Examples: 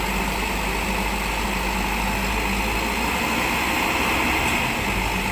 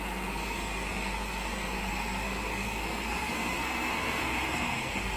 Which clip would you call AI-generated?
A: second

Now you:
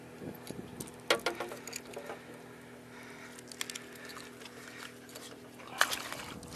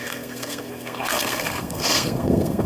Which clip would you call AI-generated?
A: second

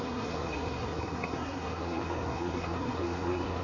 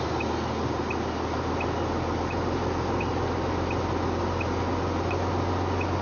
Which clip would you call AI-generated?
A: first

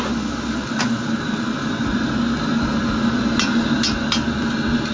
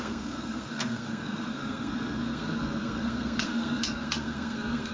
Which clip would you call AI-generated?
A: second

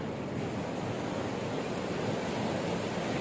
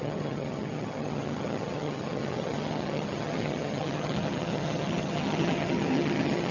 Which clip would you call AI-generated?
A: second